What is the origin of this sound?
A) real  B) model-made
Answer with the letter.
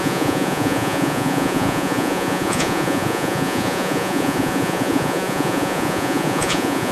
B